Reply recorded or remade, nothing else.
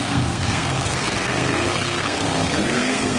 remade